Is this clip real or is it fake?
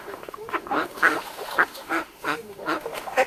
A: fake